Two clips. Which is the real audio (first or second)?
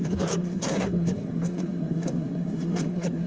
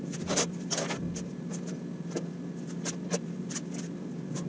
second